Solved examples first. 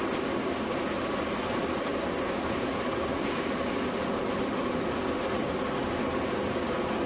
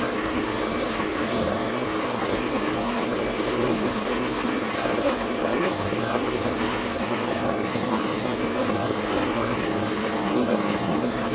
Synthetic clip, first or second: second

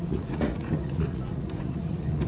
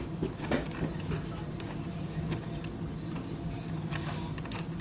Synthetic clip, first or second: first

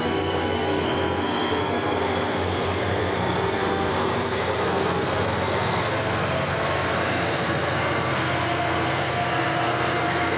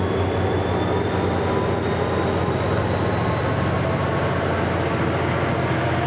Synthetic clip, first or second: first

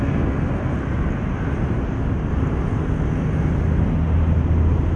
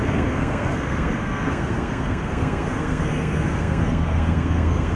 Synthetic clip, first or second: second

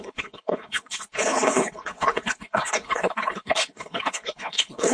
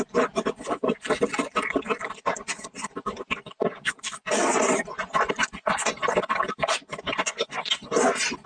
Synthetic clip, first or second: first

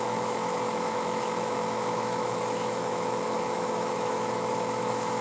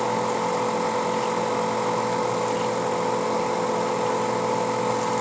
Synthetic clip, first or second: first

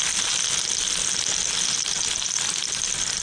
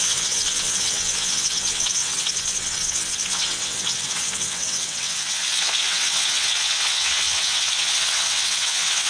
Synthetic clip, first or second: second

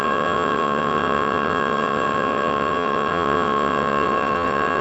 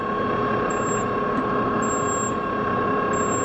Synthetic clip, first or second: first